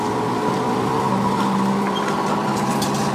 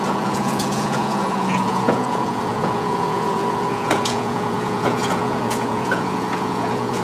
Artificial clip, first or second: second